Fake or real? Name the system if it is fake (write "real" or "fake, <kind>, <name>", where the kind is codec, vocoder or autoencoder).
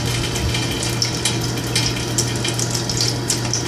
real